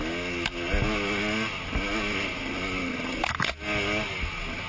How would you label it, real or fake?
real